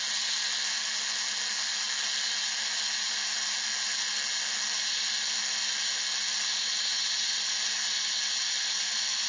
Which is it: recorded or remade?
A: recorded